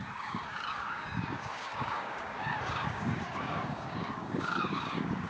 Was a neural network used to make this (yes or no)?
yes